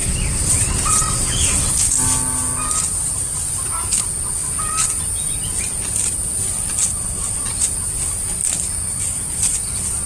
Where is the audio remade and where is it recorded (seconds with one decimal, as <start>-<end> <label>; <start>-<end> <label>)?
0.0-1.7 remade; 1.7-10.1 recorded